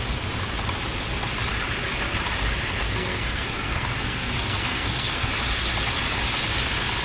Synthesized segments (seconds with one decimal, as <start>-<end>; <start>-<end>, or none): 2.8-5.3

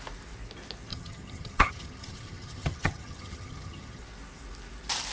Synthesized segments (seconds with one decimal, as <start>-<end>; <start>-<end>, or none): 0.9-4.0

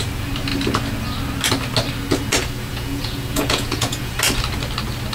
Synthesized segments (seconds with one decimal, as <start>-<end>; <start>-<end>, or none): 2.7-4.1

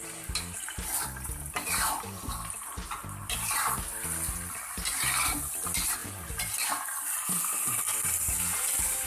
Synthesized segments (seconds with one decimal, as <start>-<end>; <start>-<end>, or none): none

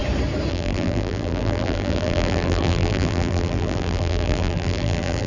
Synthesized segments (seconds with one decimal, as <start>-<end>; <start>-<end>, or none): 0.5-5.3